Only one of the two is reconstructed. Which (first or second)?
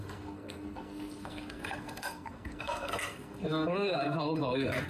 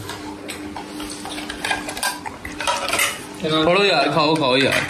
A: first